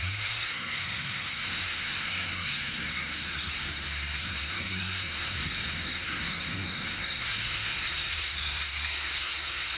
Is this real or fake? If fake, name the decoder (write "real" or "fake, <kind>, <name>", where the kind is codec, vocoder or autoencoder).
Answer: fake, codec, SNAC